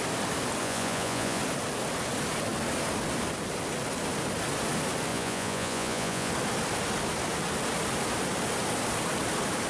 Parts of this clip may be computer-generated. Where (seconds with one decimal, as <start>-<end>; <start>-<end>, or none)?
0.6-1.4; 5.1-6.3